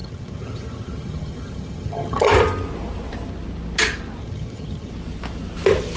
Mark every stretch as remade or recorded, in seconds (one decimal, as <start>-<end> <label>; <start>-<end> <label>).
0.0-2.3 remade; 2.3-4.2 recorded; 4.2-4.9 remade; 4.9-6.0 recorded